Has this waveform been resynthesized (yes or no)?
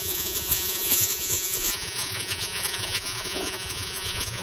yes